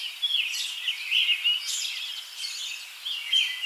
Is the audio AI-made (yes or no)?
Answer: no